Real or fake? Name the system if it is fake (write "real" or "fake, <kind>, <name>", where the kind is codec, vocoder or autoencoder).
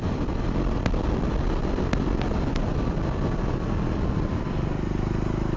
real